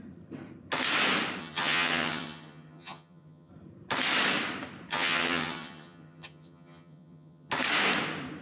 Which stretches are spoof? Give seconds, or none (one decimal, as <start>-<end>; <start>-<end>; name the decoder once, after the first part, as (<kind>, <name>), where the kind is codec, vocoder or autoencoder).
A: 1.4-3.5 (vocoder, HiFi-GAN); 4.9-7.5